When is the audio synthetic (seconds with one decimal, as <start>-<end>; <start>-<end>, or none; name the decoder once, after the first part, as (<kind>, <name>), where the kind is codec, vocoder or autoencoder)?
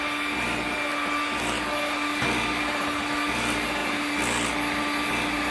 none